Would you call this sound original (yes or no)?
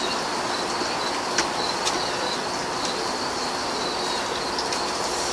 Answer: yes